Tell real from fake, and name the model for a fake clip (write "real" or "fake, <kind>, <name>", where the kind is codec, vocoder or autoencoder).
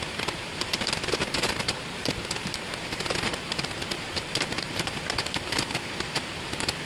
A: fake, vocoder, BigVGAN v2